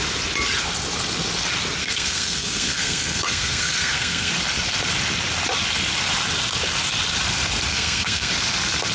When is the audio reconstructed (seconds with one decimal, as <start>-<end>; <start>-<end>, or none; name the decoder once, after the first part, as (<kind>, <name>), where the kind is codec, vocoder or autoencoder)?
1.8-4.3 (codec, SNAC); 7.7-8.3